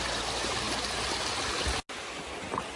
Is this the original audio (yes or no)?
yes